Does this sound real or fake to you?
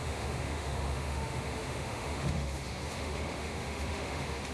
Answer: fake